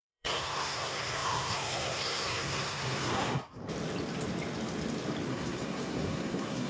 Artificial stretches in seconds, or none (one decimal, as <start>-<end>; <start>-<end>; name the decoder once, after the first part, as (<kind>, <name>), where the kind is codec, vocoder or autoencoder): 0.0-3.6 (codec, SNAC); 5.3-6.7

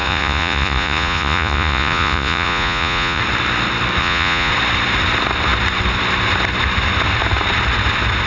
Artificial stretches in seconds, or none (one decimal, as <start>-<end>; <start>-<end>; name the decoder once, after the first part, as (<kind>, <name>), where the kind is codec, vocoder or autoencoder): 0.0-3.2 (vocoder, Vocos); 4.0-4.5

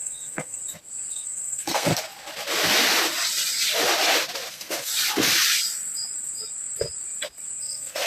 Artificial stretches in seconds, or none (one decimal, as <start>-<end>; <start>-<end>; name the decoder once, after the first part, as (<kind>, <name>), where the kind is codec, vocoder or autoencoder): 0.0-0.6 (codec, SNAC); 1.1-1.9; 4.5-4.9; 7.6-8.1